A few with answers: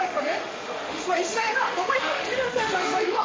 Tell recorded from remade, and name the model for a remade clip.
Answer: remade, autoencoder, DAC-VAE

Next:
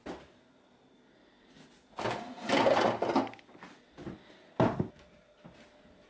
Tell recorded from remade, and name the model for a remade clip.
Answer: recorded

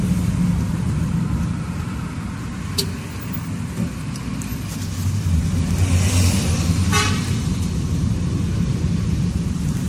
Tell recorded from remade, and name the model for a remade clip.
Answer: recorded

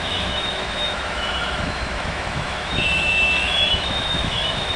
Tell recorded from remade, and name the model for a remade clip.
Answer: remade, autoencoder, DAC-VAE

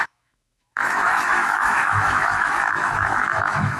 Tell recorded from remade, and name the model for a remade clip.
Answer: remade, autoencoder, DAC-VAE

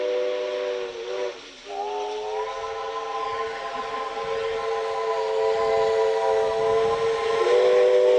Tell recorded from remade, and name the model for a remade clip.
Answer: recorded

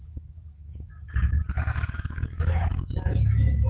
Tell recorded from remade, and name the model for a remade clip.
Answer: remade, autoencoder, DAC-VAE